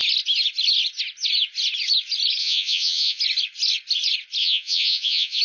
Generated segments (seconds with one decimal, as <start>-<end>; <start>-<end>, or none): 2.4-3.2; 4.4-5.4